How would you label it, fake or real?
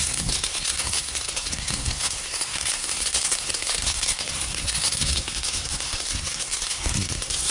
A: fake